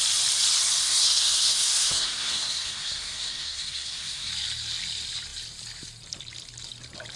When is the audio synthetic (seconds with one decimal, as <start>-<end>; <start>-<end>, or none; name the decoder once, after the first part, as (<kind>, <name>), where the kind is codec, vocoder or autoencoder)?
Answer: 0.8-4.3 (codec, SNAC)